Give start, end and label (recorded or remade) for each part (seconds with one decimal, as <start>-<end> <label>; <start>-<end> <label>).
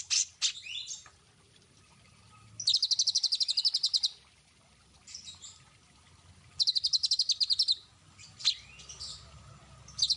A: 0.0-10.2 recorded